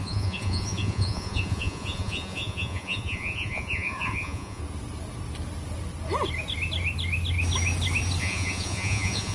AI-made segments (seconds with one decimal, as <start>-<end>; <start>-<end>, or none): 0.0-4.6; 8.2-9.3